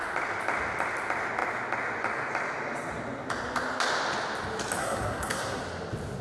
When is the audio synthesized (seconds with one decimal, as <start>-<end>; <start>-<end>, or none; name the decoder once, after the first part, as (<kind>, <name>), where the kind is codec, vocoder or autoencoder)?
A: 4.8-5.6 (codec, SNAC)